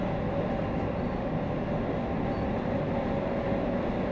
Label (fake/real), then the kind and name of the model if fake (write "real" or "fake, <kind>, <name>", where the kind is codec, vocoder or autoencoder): real